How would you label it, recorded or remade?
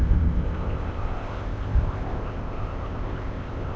remade